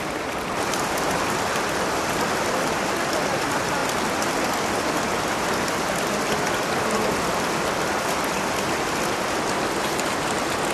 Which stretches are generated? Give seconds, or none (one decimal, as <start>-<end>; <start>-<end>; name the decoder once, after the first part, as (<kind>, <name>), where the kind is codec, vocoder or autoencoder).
none